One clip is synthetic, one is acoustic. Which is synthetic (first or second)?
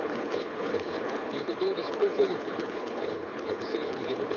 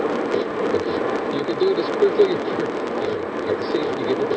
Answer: first